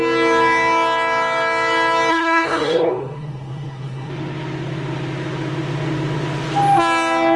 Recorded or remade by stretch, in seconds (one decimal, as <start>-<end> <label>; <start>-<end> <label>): 0.0-2.1 recorded; 2.1-4.1 remade; 4.1-7.4 recorded